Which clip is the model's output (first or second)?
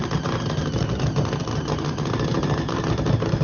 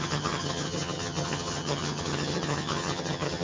second